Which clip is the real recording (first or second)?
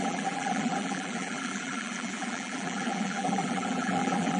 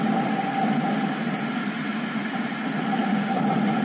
second